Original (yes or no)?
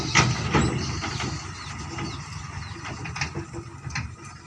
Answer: yes